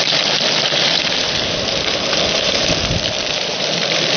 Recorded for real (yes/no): no